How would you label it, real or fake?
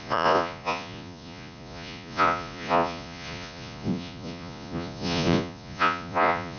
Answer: fake